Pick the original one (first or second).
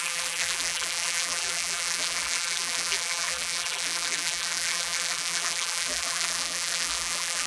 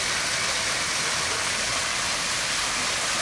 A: second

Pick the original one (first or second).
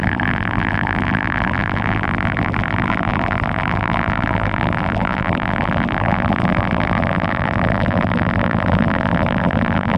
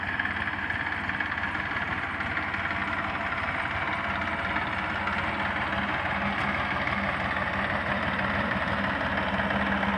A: second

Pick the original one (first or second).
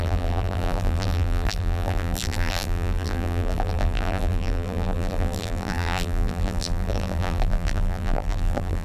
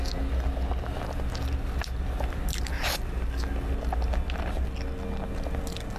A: second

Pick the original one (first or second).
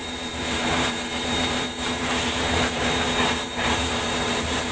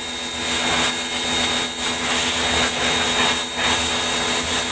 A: second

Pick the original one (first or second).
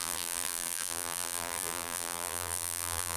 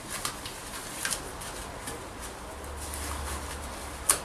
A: second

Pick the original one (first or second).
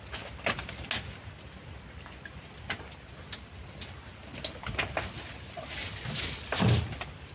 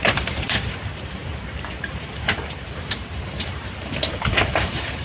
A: first